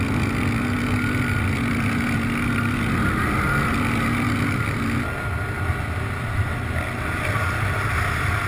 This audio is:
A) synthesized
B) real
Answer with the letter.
B